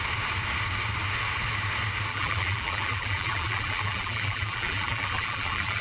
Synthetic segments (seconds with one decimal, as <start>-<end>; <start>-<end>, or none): 2.1-5.8